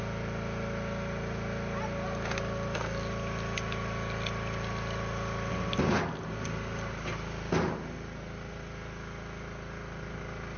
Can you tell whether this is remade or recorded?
recorded